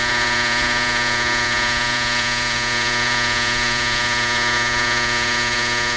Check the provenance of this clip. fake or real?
fake